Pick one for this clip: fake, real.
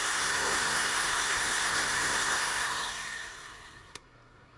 fake